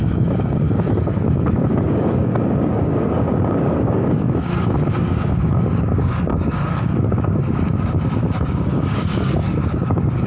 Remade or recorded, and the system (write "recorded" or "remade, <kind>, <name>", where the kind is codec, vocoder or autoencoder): remade, codec, DAC